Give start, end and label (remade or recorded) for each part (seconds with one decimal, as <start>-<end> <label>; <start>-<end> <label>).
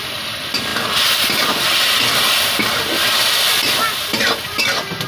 0.0-5.1 recorded